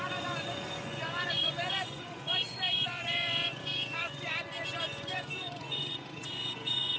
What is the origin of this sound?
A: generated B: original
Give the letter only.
A